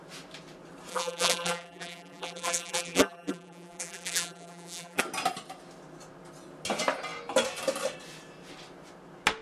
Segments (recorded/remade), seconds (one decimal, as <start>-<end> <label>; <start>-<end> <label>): 0.0-0.9 recorded; 0.9-5.0 remade; 5.0-9.4 recorded